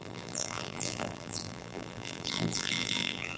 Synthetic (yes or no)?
yes